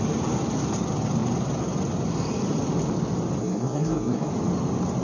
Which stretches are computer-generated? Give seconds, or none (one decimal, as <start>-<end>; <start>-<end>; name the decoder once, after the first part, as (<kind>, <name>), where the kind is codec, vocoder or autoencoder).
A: 3.4-4.3 (codec, SNAC)